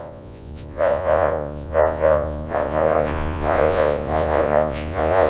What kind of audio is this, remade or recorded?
remade